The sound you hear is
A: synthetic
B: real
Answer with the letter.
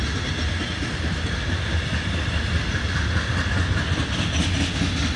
B